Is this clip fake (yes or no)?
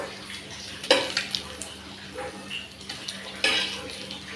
no